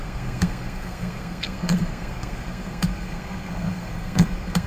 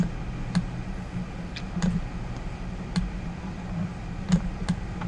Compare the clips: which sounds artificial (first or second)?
first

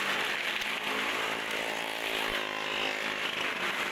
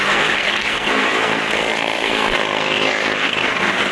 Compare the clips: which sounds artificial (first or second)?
second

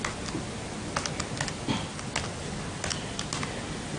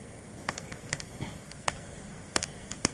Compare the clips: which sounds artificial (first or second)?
second